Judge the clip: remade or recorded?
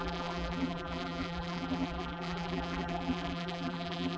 remade